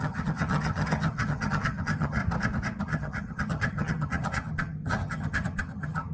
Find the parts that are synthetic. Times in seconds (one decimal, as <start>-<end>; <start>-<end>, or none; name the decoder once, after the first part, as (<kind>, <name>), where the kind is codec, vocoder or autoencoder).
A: 0.0-2.2 (vocoder, HiFi-GAN); 2.8-6.1